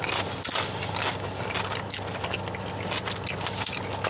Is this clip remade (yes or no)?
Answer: no